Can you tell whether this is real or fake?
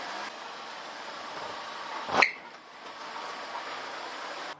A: real